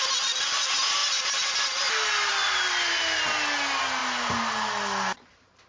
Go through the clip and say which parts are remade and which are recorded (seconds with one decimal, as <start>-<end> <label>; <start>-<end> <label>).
0.0-5.7 recorded